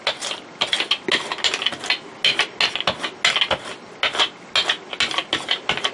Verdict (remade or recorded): recorded